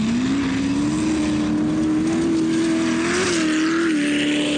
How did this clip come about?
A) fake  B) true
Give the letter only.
B